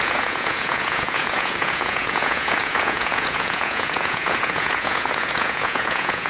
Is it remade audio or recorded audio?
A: remade